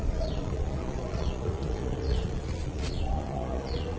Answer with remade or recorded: remade